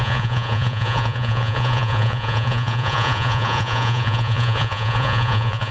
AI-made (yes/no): yes